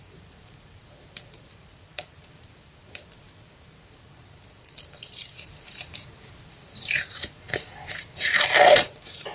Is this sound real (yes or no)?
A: no